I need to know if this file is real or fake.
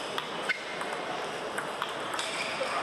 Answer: real